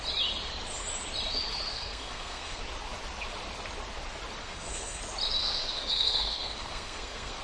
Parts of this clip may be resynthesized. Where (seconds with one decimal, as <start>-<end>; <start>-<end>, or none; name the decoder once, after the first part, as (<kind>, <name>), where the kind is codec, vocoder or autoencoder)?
1.7-2.6 (codec, SNAC); 4.4-5.0; 5.4-7.4

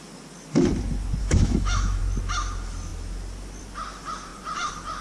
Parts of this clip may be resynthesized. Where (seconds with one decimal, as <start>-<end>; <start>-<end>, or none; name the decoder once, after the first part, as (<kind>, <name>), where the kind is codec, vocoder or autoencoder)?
1.2-2.0 (autoencoder, DAC-VAE)

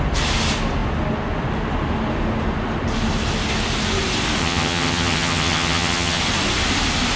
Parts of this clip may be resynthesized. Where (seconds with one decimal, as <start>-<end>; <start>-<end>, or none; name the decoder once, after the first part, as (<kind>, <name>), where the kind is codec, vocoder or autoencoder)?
4.4-6.2 (vocoder, HiFi-GAN)

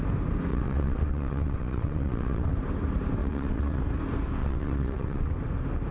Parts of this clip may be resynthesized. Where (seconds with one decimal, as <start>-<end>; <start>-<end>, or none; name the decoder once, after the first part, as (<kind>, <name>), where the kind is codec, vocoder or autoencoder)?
0.5-2.5 (vocoder, WaveNeXt); 3.2-3.8; 4.4-5.3

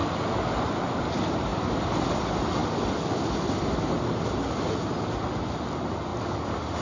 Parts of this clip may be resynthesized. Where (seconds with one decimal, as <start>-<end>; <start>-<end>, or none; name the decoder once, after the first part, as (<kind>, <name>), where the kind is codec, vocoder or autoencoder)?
none

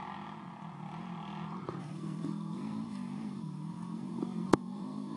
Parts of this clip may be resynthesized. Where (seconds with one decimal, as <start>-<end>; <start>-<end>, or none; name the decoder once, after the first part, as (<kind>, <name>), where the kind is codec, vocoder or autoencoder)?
1.8-5.2 (codec, SNAC)

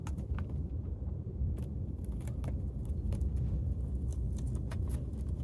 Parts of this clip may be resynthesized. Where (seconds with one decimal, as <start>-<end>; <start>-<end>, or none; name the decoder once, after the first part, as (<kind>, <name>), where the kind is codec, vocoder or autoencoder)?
0.0-3.2 (vocoder, BigVGAN v2)

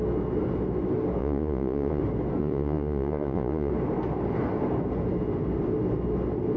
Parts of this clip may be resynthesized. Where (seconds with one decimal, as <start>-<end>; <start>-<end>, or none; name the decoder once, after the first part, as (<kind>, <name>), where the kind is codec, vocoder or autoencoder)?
1.2-2.0 (vocoder, Vocos); 2.4-3.7